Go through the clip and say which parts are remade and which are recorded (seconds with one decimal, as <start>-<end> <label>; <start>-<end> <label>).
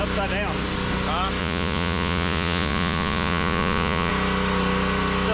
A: 0.0-1.4 recorded; 1.4-4.1 remade; 4.1-5.3 recorded